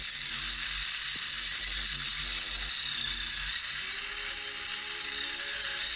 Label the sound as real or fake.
real